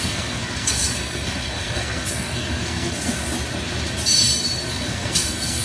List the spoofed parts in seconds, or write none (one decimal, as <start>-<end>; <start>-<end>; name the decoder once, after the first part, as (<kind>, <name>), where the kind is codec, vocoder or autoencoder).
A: 0.0-3.2 (codec, SNAC); 4.7-5.6